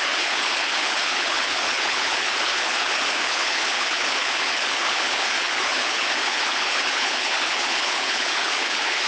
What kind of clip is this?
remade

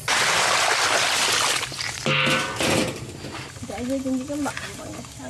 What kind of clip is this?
recorded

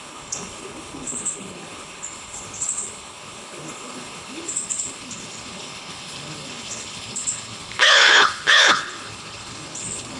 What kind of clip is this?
remade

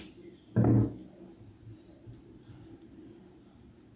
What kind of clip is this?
recorded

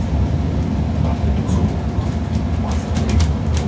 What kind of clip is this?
recorded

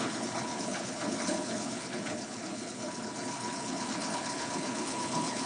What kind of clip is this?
remade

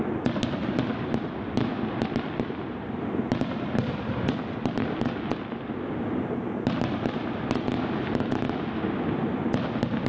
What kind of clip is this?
recorded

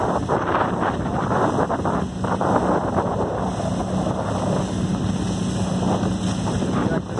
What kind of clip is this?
recorded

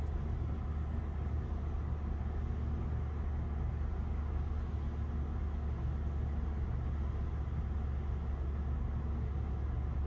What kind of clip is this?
recorded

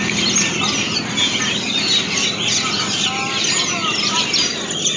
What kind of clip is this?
recorded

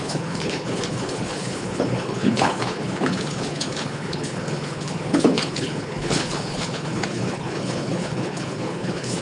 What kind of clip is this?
remade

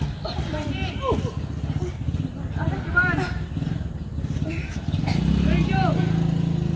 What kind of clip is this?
recorded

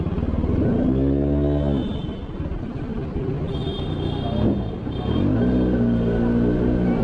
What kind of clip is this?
recorded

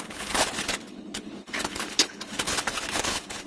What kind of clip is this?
remade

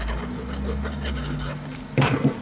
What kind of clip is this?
recorded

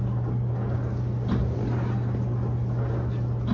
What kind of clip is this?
recorded